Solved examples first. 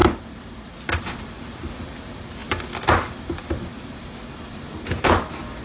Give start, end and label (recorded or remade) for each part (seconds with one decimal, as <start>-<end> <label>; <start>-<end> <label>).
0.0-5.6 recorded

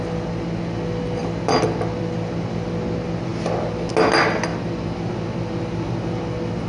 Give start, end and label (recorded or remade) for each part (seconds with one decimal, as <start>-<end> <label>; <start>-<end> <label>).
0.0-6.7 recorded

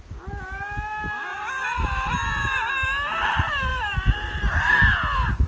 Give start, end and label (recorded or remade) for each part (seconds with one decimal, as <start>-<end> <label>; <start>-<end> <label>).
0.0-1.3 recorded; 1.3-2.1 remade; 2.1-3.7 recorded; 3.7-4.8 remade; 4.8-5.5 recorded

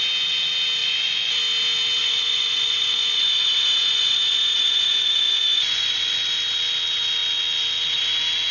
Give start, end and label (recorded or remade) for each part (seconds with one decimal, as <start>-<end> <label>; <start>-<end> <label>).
0.0-0.8 recorded; 0.8-1.4 remade; 1.4-2.0 recorded; 2.0-6.1 remade; 6.1-8.5 recorded

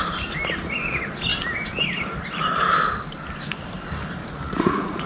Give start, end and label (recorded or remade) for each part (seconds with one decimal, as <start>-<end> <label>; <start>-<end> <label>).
0.0-4.2 recorded; 4.2-5.1 remade